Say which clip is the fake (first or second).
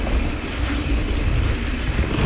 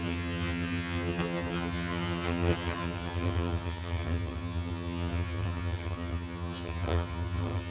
second